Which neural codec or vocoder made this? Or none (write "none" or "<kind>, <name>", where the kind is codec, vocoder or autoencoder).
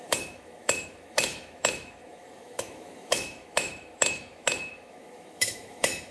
autoencoder, DAC-VAE